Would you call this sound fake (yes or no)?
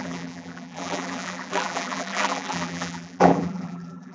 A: yes